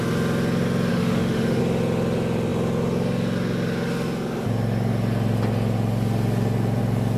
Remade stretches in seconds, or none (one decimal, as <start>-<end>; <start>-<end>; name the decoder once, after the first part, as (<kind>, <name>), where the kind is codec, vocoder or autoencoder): 0.9-1.6 (autoencoder, DAC-VAE)